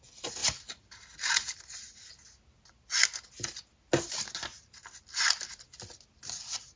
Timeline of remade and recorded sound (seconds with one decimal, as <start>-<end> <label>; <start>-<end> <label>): 0.0-6.8 recorded